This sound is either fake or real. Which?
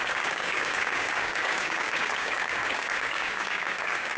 fake